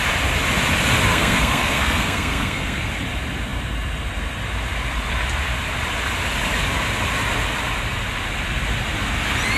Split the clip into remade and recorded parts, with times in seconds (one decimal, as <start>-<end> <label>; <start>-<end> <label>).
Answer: 0.0-1.1 recorded; 1.1-2.9 remade; 2.9-9.6 recorded